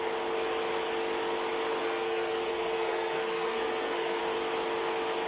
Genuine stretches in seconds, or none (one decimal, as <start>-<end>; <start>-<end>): 0.0-1.8; 4.2-5.3